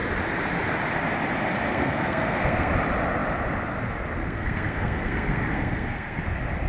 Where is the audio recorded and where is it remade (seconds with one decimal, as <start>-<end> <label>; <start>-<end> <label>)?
0.0-1.7 recorded; 1.7-2.7 remade; 2.7-4.2 recorded; 4.2-6.2 remade; 6.2-6.7 recorded